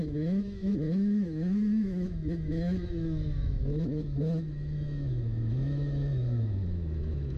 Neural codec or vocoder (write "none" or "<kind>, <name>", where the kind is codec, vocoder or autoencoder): autoencoder, DAC-VAE